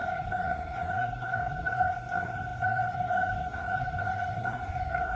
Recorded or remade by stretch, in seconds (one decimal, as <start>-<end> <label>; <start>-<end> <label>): 0.0-5.2 remade